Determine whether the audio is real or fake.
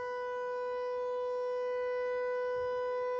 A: real